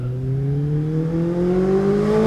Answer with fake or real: real